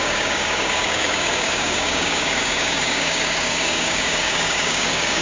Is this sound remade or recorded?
remade